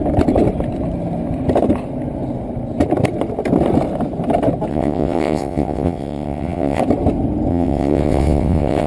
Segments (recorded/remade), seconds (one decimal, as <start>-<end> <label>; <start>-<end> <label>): 0.0-4.7 recorded; 4.7-6.8 remade; 6.8-7.5 recorded; 7.5-8.9 remade